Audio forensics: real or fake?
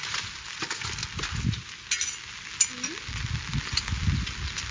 real